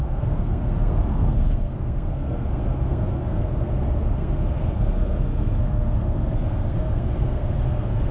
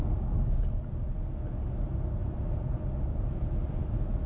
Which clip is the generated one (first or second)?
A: first